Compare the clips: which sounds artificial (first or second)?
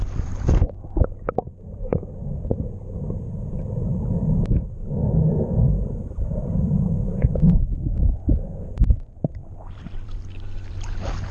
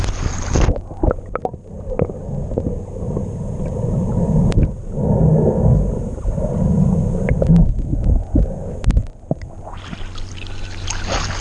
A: first